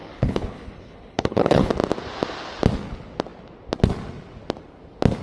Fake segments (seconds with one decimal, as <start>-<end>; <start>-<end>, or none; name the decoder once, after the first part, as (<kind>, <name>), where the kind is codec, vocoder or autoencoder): 0.0-1.7 (codec, HILCodec)